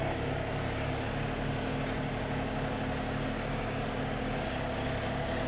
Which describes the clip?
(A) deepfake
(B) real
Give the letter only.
A